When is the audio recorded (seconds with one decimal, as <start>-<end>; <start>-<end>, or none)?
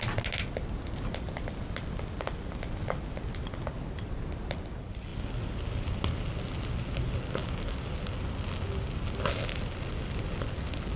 0.0-11.0